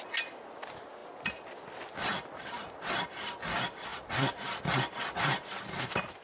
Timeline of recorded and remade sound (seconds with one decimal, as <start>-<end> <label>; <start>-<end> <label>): 0.0-6.2 recorded